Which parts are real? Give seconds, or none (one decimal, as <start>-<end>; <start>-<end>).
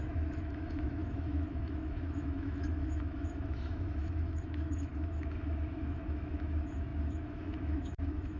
none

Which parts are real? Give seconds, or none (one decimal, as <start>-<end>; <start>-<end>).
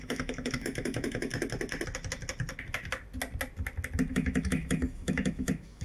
1.3-4.1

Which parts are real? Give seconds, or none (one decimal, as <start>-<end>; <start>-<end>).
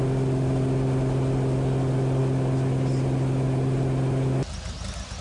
0.0-5.2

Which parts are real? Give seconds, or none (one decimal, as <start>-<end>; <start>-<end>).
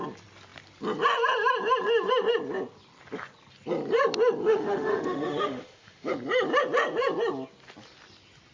0.0-4.4; 6.1-8.5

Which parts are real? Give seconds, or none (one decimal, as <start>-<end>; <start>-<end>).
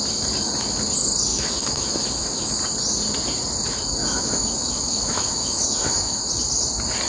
0.0-1.3; 2.5-4.0; 6.2-7.1